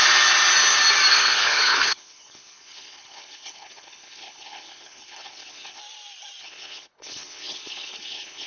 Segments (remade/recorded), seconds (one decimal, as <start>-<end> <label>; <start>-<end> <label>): 0.0-1.1 recorded; 1.1-5.8 remade; 5.8-6.4 recorded; 6.4-8.5 remade